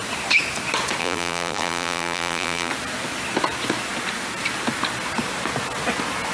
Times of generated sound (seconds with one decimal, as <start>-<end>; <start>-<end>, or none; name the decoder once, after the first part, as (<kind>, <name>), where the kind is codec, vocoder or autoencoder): 1.0-2.7 (vocoder, BigVGAN v2)